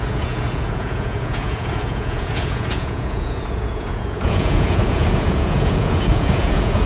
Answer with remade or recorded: remade